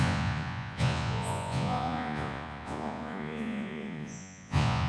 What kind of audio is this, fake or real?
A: fake